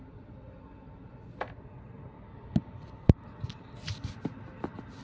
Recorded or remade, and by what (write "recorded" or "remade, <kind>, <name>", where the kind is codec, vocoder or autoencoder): recorded